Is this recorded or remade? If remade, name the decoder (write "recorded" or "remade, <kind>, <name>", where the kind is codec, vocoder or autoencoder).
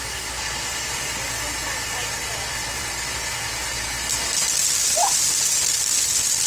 recorded